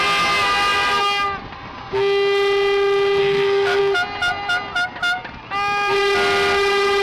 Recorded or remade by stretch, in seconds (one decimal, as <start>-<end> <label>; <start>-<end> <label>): 0.0-3.2 recorded; 3.2-3.8 remade; 3.8-7.0 recorded